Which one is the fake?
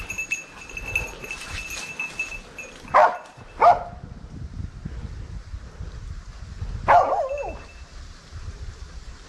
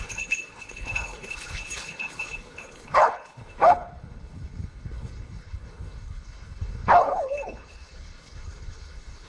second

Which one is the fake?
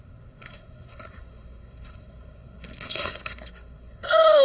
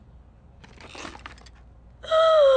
first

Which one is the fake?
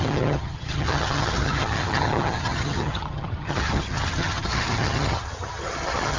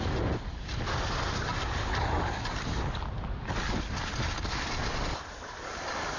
first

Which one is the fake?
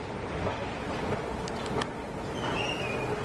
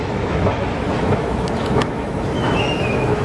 second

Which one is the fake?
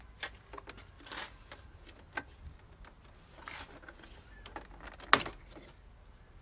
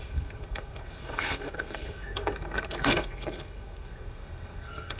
second